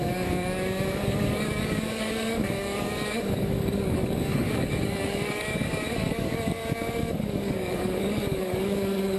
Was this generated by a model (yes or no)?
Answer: yes